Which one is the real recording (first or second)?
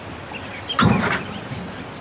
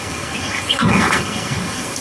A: first